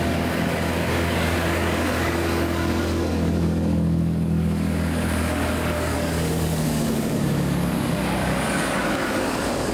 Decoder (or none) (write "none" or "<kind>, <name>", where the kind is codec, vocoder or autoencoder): codec, DAC